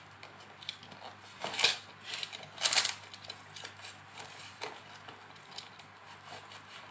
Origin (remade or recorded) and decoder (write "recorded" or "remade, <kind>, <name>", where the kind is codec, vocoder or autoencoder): recorded